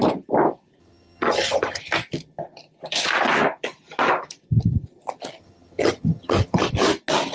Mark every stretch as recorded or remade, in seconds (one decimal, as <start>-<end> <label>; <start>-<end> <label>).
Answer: 0.0-0.8 recorded; 0.8-1.8 remade; 1.8-5.4 recorded; 5.4-6.7 remade; 6.7-7.3 recorded